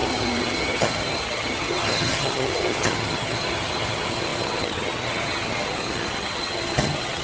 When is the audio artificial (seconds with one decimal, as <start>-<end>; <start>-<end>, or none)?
0.0-7.2